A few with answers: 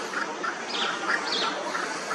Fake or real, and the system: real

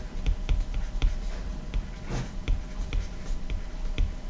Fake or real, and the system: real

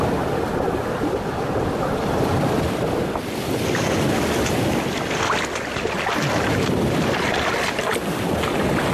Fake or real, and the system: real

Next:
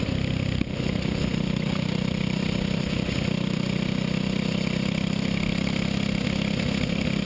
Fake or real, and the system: real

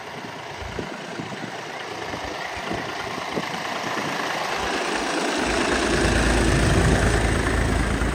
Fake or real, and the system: fake, vocoder, BigVGAN v2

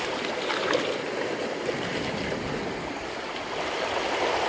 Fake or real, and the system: real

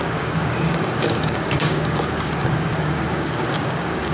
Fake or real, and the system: fake, codec, DAC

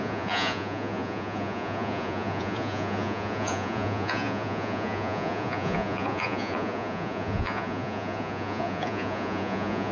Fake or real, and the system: fake, vocoder, Vocos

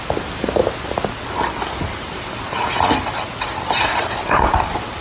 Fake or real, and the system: real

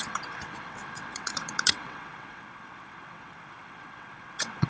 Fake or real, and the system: fake, vocoder, WaveNeXt